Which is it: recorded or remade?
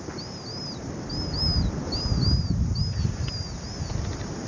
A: recorded